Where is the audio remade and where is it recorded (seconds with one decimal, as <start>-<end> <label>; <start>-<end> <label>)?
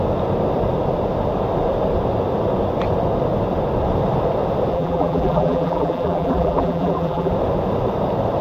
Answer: 0.0-4.7 recorded; 4.7-7.3 remade; 7.3-8.4 recorded